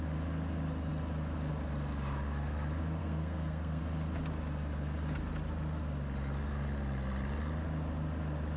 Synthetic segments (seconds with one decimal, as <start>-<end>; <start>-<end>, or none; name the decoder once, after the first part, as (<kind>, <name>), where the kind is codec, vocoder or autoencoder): 3.0-3.8 (codec, SNAC)